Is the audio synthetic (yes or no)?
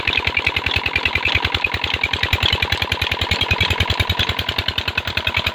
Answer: no